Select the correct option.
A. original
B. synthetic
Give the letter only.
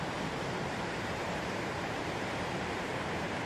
B